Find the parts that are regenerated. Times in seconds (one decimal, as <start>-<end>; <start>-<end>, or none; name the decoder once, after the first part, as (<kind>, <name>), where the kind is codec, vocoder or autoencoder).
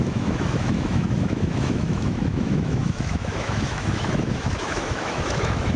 0.0-5.8 (autoencoder, DAC-VAE)